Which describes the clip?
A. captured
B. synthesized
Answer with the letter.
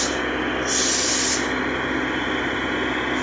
A